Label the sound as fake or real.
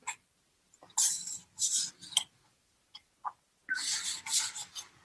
real